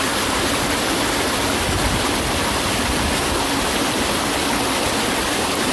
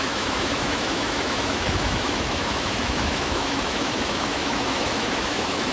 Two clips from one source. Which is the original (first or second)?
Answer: first